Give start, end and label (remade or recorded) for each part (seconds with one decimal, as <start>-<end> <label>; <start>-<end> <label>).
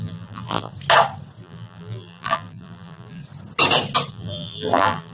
0.0-0.7 remade; 0.7-1.4 recorded; 1.4-3.2 remade; 3.2-4.1 recorded; 4.1-5.1 remade